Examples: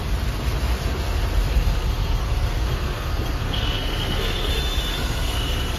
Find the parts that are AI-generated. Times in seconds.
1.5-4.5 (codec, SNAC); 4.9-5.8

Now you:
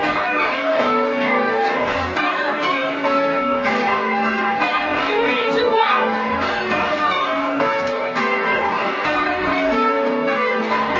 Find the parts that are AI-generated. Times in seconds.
0.0-11.0 (codec, DAC)

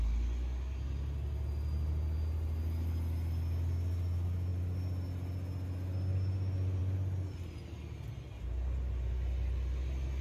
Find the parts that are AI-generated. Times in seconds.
none

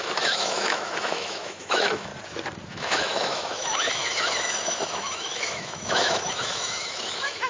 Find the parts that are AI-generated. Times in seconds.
0.0-2.1 (autoencoder, DAC-VAE); 2.7-7.5